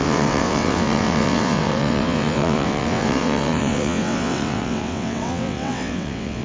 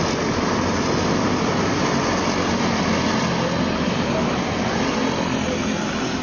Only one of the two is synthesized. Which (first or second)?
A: first